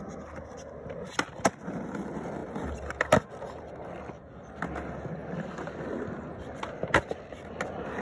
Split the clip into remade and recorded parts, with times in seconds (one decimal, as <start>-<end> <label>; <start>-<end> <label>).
0.0-8.0 recorded